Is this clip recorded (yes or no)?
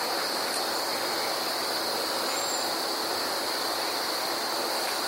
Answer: yes